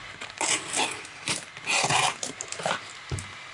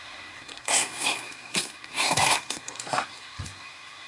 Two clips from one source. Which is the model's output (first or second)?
second